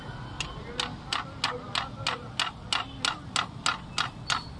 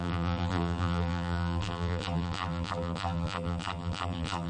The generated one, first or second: second